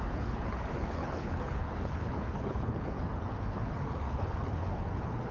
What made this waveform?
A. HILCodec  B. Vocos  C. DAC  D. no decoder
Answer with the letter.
A